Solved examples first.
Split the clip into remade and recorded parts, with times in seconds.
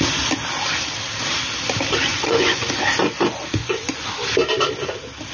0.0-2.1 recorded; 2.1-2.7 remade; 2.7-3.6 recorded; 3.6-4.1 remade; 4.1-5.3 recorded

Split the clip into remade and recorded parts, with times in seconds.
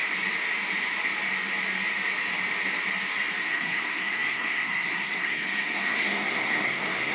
0.0-3.4 recorded; 3.4-7.1 remade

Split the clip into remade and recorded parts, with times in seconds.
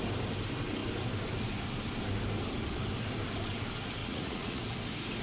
0.0-4.0 recorded; 4.0-4.6 remade; 4.6-5.2 recorded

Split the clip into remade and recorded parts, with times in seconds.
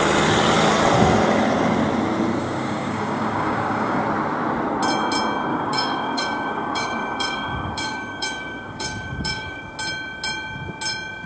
0.0-2.4 recorded; 2.4-4.0 remade; 4.0-5.5 recorded; 5.5-9.6 remade; 9.6-11.3 recorded